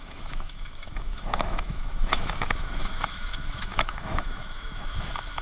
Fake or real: fake